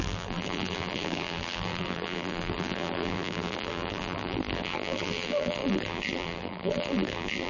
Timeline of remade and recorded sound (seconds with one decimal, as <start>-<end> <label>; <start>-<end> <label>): 0.0-7.5 remade